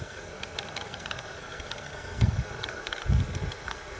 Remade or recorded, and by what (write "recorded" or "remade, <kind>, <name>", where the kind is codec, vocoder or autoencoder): remade, codec, SNAC